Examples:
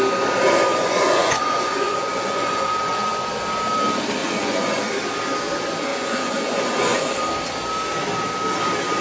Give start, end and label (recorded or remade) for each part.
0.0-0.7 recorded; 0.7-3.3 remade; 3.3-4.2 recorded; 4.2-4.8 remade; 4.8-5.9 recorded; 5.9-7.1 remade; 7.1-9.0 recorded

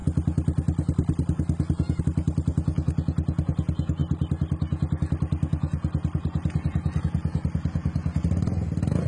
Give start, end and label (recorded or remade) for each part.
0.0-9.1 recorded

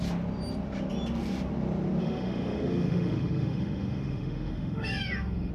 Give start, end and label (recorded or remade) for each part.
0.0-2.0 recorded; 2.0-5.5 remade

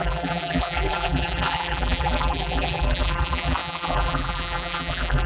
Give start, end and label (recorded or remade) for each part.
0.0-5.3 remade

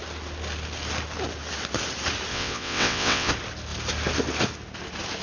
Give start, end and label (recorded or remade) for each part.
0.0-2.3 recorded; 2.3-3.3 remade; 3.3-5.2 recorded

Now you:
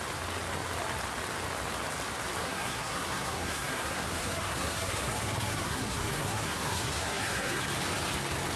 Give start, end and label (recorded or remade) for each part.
0.0-2.4 recorded; 2.4-7.6 remade; 7.6-8.6 recorded

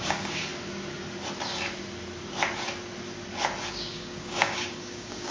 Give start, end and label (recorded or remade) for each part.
0.0-0.5 remade; 0.5-3.7 recorded; 3.7-5.3 remade

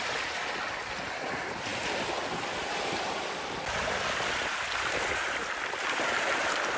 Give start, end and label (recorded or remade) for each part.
0.0-6.8 recorded